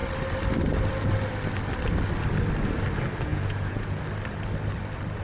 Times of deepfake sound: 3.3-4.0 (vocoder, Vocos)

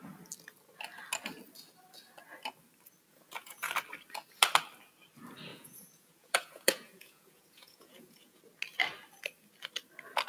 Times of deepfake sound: 3.1-3.7 (vocoder, Vocos); 5.5-8.4